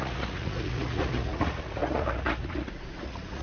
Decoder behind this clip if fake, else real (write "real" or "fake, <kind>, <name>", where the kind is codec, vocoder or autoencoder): fake, vocoder, Vocos